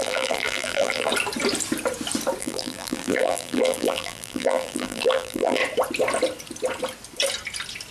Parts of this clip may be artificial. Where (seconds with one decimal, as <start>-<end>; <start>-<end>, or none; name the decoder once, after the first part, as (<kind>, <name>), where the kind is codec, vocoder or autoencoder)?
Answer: 0.0-1.1 (vocoder, BigVGAN v2); 2.4-5.6